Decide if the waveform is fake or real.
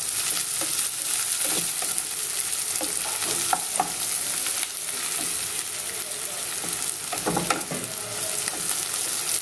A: real